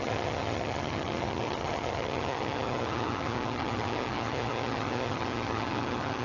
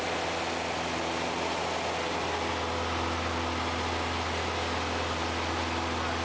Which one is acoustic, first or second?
second